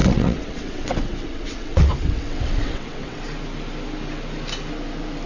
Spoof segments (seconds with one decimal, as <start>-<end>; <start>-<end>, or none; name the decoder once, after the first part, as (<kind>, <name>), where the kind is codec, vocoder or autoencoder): 0.0-3.2 (vocoder, WaveNeXt)